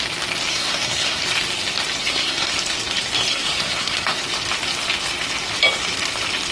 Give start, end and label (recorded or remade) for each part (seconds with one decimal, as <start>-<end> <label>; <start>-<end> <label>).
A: 0.0-0.5 recorded; 0.5-1.2 remade; 1.2-2.0 recorded; 2.0-2.5 remade; 2.5-3.3 recorded; 3.3-4.2 remade; 4.2-6.5 recorded